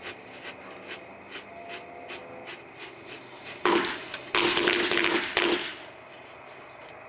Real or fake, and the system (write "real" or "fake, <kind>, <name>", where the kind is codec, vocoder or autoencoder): real